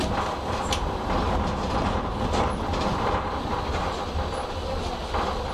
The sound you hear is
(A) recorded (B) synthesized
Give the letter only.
A